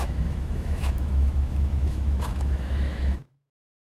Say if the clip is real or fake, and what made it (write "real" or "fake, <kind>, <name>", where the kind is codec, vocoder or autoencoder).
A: fake, autoencoder, DAC-VAE